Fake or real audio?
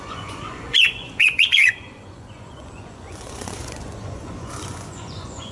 fake